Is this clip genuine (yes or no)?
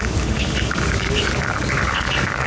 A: no